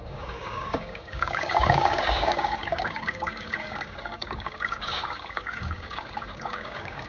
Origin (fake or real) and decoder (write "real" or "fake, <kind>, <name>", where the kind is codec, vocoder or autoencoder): fake, codec, DAC